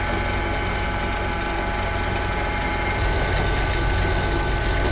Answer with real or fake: real